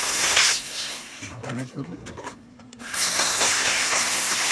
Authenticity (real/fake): fake